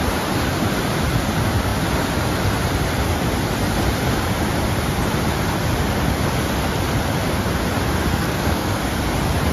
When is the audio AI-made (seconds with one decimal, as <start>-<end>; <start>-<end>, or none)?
8.1-8.8